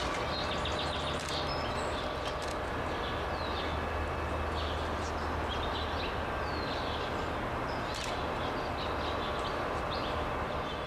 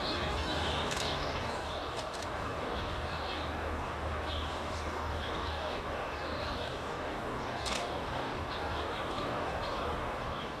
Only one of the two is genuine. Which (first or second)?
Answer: first